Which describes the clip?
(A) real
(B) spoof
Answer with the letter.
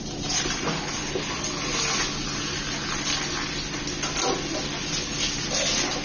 A